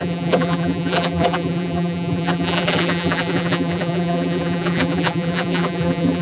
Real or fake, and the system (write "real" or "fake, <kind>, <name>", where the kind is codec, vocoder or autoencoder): fake, vocoder, BigVGAN v2